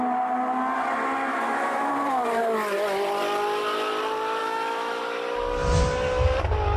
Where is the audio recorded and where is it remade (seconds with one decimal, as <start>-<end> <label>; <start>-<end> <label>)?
0.0-1.3 recorded; 1.3-1.9 remade; 1.9-4.4 recorded; 4.4-5.0 remade; 5.0-6.8 recorded